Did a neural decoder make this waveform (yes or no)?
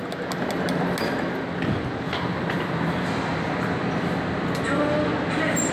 no